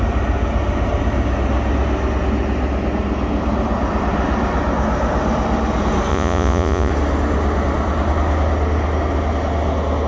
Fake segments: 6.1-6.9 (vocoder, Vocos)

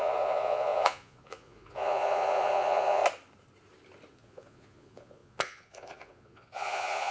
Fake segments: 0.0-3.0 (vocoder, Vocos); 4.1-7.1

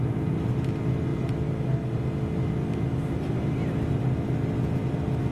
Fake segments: none